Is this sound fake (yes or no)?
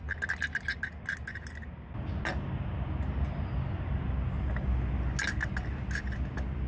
no